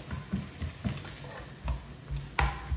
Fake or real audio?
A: real